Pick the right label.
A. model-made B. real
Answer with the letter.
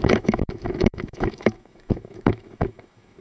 A